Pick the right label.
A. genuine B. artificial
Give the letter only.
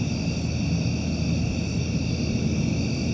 A